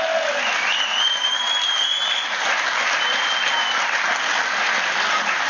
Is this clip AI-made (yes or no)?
no